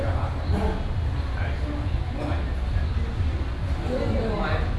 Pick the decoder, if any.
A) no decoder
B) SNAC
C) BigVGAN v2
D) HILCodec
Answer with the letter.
A